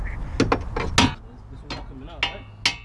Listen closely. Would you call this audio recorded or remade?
recorded